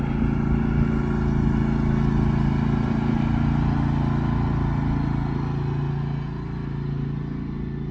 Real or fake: real